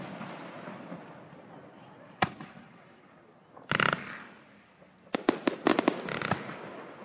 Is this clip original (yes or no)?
yes